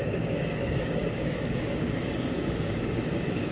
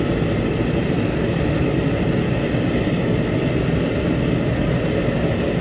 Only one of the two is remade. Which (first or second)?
first